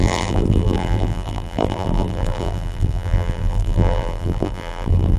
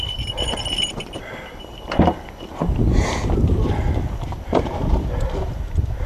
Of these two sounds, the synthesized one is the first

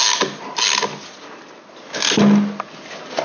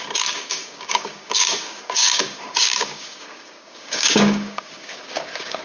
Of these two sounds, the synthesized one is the second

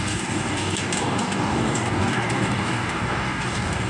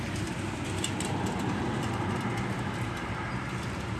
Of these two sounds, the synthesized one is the first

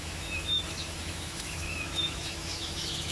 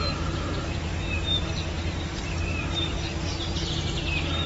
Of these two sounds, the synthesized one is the first